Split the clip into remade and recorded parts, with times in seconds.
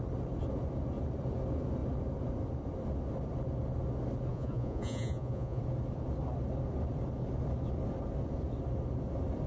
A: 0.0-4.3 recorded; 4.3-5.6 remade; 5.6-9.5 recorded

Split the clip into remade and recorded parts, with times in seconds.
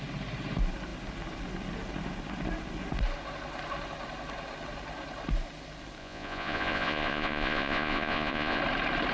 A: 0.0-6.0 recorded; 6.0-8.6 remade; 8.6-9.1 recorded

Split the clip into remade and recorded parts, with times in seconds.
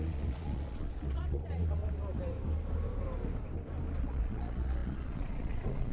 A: 0.0-1.8 remade; 1.8-4.0 recorded; 4.0-5.9 remade